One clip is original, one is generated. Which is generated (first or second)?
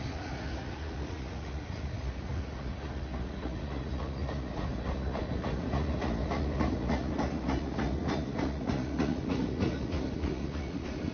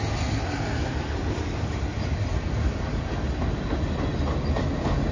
first